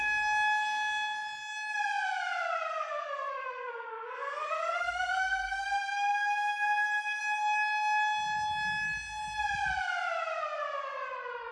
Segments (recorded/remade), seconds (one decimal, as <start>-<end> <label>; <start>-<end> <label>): 0.0-2.7 recorded; 2.7-7.2 remade; 7.2-11.5 recorded